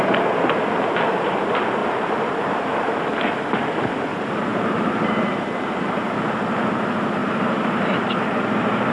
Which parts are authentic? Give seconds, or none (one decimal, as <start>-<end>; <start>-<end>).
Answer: 0.0-1.8; 2.6-4.5; 6.2-7.2

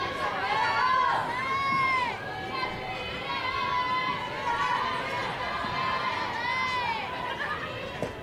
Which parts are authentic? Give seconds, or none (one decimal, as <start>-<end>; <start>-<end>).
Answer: 0.0-1.2; 2.3-8.2